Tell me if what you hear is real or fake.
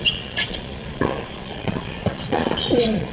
fake